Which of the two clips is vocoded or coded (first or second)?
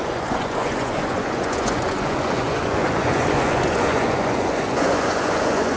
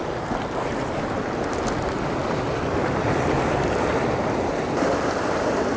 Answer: first